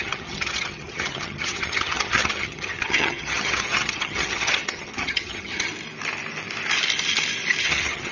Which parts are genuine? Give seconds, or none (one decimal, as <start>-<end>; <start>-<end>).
5.7-7.6